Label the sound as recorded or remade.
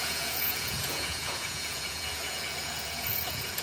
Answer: remade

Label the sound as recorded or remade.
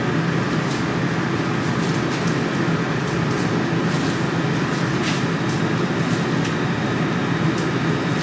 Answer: recorded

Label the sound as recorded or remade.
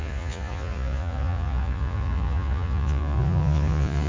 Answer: remade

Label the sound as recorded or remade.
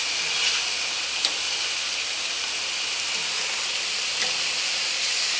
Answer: recorded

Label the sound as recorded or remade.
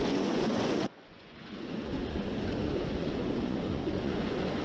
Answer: remade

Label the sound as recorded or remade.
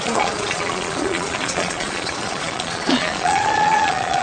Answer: remade